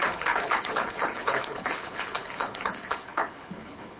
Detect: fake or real fake